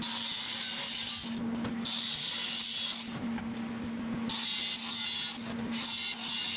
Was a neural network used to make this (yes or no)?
no